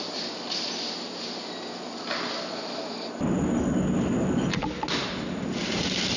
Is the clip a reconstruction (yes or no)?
no